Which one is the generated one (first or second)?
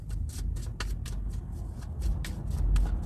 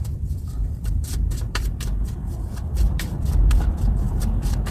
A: second